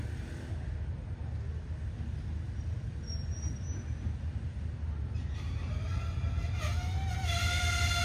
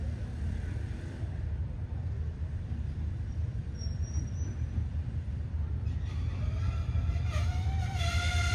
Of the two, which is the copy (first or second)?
second